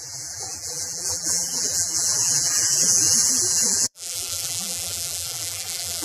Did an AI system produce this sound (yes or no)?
yes